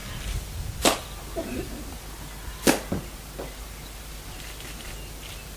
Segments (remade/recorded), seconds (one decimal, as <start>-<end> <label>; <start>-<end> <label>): 0.0-2.3 remade; 2.3-5.6 recorded